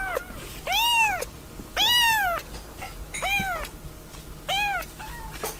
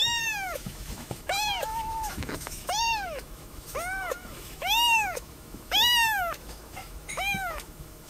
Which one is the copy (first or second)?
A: second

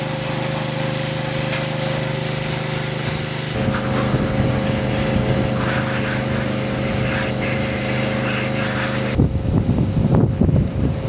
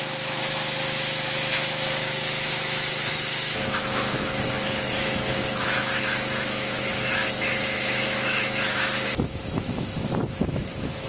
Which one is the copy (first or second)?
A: second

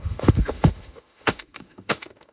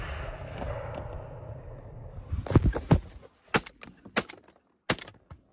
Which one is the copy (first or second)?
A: first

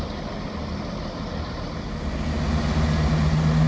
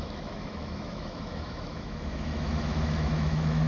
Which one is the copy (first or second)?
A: second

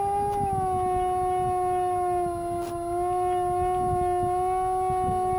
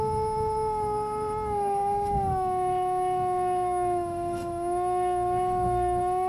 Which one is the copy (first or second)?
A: second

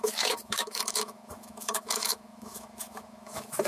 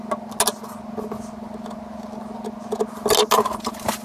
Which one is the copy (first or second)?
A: first